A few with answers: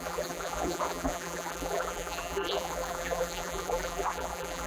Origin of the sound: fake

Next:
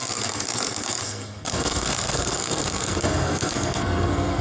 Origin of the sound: fake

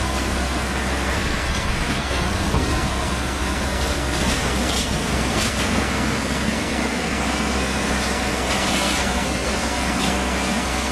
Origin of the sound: fake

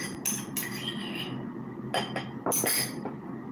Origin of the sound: real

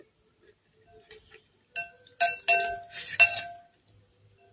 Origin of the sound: real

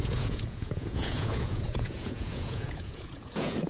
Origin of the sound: fake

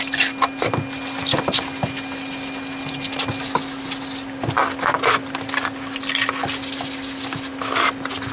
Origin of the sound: real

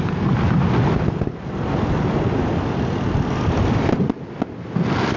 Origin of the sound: real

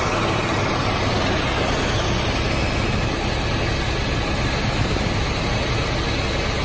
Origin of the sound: real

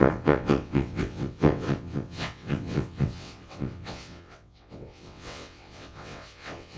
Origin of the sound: fake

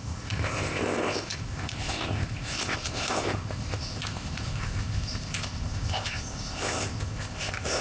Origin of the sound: fake